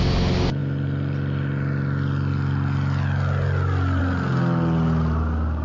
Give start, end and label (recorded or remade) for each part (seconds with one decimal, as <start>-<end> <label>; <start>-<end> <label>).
0.0-5.6 recorded